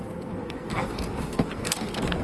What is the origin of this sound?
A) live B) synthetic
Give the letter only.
B